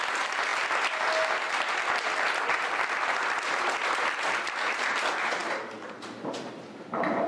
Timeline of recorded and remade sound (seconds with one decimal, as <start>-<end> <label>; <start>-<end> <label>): 0.0-7.3 recorded